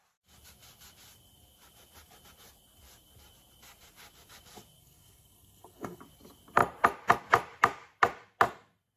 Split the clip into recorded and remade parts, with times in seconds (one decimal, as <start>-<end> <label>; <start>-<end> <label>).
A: 0.0-4.8 recorded; 4.8-6.0 remade; 6.0-9.0 recorded